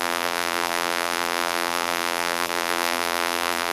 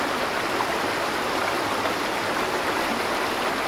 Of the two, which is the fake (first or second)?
first